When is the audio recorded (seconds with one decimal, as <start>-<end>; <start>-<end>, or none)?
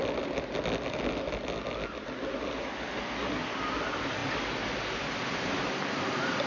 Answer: 0.0-6.5